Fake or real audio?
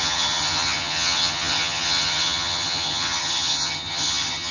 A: fake